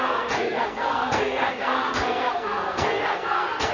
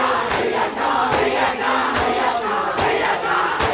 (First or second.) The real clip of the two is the second